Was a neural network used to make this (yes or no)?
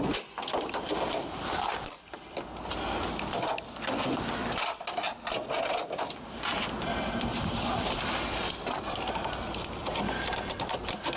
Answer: no